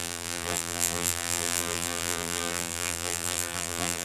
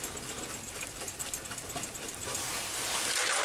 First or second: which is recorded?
second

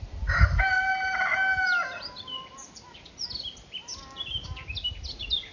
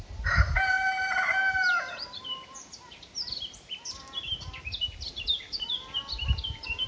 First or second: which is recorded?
first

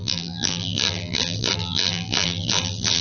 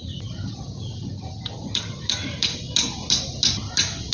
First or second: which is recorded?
second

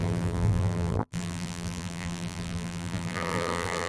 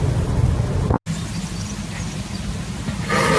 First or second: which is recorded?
second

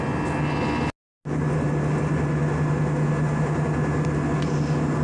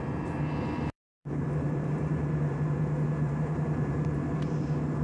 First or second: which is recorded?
first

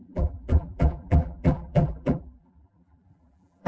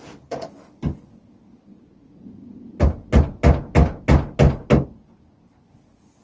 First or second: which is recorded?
second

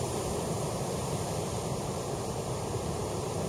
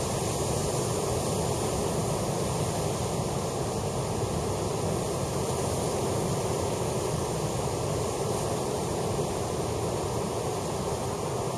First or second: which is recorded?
second